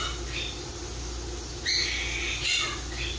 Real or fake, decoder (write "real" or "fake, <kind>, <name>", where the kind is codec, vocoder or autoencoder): real